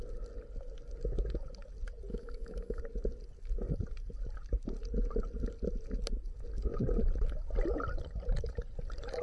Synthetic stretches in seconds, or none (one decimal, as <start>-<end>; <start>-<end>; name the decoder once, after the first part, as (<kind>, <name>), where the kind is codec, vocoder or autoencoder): 2.1-2.8 (autoencoder, DAC-VAE)